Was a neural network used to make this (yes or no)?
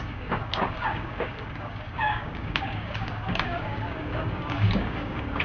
yes